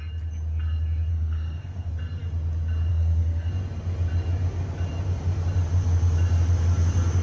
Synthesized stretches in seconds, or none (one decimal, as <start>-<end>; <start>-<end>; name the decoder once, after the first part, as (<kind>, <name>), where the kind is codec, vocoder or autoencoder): 1.1-1.9 (codec, SNAC); 2.9-3.5